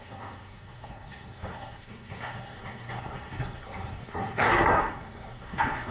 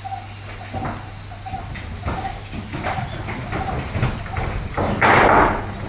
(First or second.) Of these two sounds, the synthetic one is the first